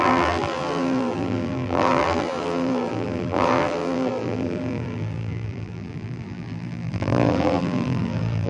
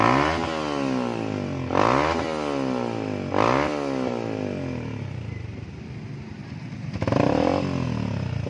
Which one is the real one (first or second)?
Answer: second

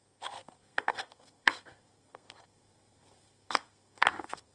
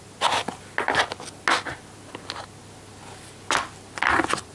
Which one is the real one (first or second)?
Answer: second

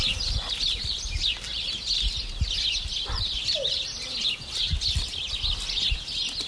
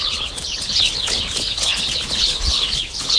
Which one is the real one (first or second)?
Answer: first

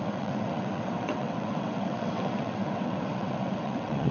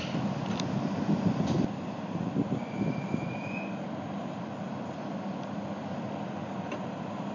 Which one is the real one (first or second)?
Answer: second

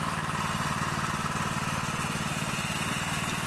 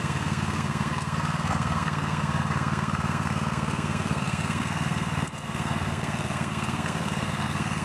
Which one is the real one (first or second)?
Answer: first